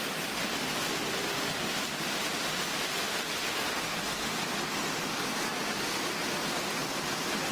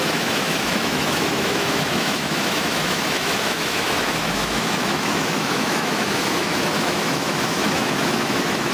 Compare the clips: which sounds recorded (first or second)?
first